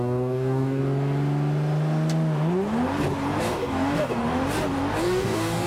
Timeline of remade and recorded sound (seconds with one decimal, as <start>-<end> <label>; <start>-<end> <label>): 0.0-0.8 remade; 0.8-3.4 recorded; 3.4-4.2 remade; 4.2-5.0 recorded; 5.0-5.7 remade